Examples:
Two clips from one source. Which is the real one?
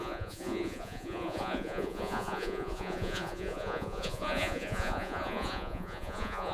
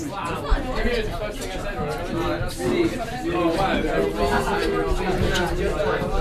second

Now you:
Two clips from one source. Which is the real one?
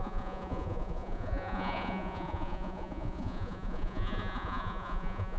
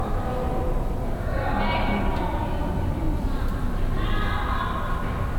second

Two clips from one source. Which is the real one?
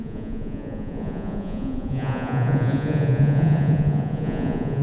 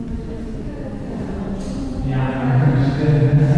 second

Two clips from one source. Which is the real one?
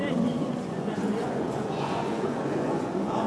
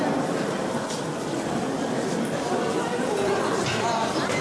second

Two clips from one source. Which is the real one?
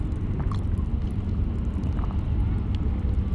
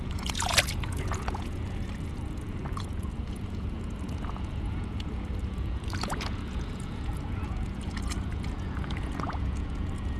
first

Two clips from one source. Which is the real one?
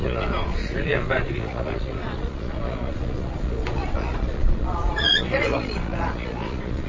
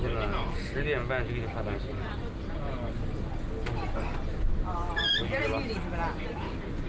second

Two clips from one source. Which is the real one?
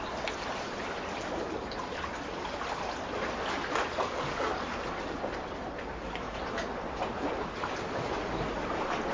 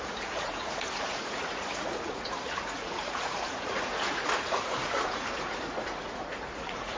first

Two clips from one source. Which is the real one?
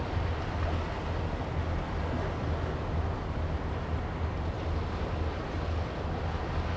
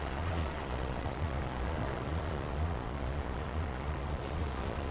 first